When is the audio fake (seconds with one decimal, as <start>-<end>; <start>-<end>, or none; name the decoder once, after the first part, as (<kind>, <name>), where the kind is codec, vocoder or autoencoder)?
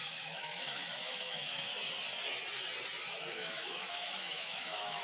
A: 0.0-1.7 (autoencoder, DAC-VAE); 3.2-5.0